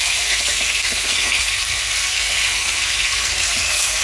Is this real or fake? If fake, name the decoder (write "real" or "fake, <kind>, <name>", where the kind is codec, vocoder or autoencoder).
fake, codec, SNAC